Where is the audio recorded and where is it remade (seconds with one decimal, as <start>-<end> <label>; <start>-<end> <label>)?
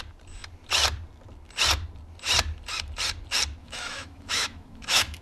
0.0-3.6 recorded; 3.6-5.2 remade